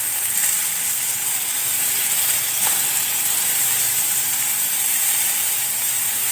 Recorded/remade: recorded